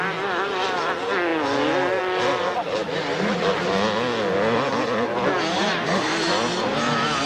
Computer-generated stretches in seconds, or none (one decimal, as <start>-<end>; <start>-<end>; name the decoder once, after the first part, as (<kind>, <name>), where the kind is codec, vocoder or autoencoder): none